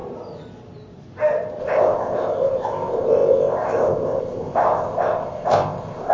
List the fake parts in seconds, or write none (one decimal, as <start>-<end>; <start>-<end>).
1.6-6.1